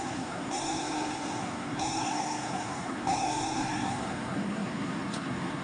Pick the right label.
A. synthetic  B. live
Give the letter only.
A